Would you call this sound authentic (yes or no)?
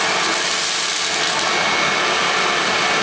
yes